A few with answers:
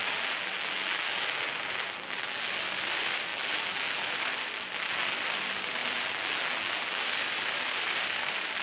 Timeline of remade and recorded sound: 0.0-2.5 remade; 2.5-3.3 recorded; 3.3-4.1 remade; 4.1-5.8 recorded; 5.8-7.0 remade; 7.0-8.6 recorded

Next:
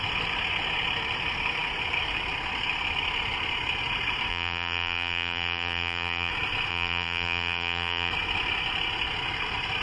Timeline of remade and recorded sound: 0.0-4.3 recorded; 4.3-6.3 remade; 6.3-6.7 recorded; 6.7-8.1 remade; 8.1-9.8 recorded

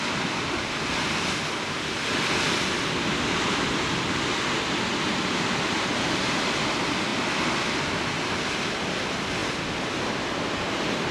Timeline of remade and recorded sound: 0.0-9.4 recorded; 9.4-9.9 remade; 9.9-11.1 recorded

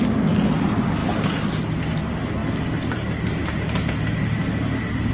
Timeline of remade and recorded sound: 0.0-5.1 recorded

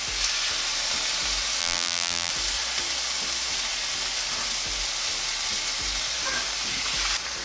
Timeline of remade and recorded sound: 0.0-1.6 recorded; 1.6-2.3 remade; 2.3-7.4 recorded